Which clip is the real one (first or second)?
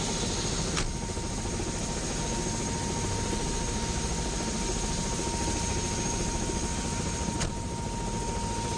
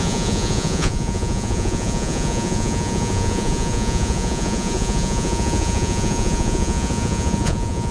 first